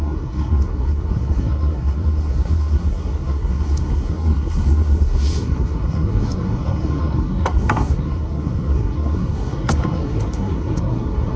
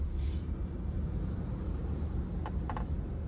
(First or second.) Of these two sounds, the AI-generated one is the first